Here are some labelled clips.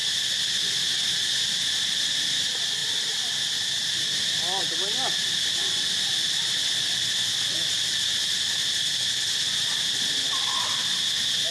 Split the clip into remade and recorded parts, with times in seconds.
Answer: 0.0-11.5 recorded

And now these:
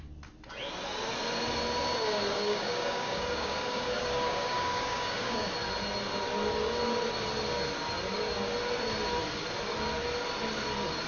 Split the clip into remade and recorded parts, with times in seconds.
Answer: 0.0-2.3 recorded; 2.3-5.5 remade; 5.5-11.1 recorded

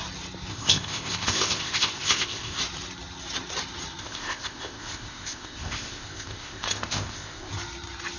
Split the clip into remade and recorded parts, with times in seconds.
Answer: 0.0-0.5 recorded; 0.5-2.6 remade; 2.6-4.0 recorded; 4.0-7.5 remade; 7.5-8.2 recorded

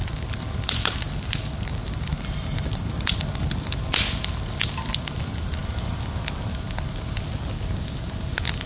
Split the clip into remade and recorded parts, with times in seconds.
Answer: 0.0-8.7 recorded

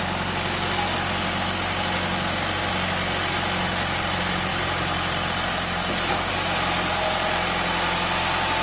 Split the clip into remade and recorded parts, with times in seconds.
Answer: 0.0-8.6 recorded

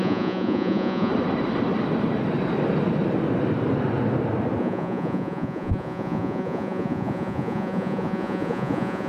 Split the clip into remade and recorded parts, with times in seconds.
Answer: 0.0-1.1 remade; 1.1-4.6 recorded; 4.6-9.1 remade

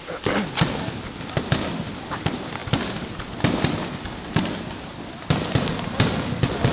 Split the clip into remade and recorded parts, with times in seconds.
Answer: 0.0-6.7 recorded

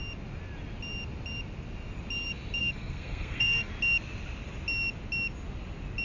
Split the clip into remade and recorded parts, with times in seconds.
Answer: 0.0-2.6 recorded; 2.6-3.7 remade; 3.7-6.0 recorded